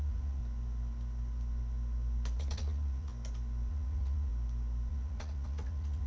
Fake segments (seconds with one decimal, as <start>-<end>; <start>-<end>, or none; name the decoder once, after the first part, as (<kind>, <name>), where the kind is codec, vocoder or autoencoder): 0.0-0.4 (vocoder, Vocos); 2.4-3.1; 3.7-4.3; 4.9-6.1